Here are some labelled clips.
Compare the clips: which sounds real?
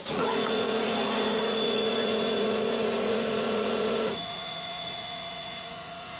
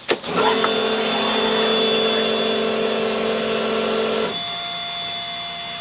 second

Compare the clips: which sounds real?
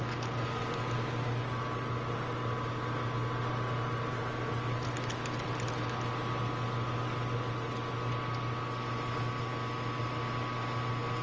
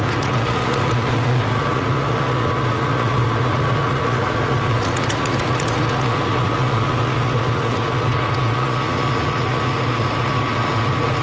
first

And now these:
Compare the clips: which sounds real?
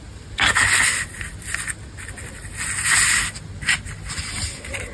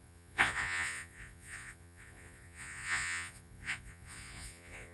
first